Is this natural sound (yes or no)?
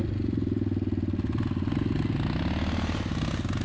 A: yes